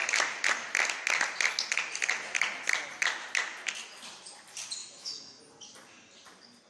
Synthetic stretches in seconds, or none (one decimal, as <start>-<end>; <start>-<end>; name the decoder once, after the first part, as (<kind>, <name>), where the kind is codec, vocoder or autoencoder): 4.8-5.4 (autoencoder, DAC-VAE)